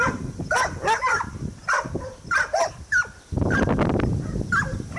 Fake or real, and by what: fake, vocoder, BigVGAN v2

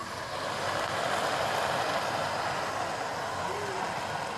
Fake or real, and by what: real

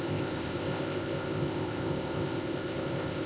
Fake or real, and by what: fake, codec, ZipCodec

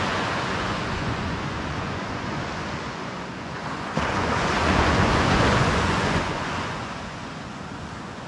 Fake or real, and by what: fake, vocoder, Vocos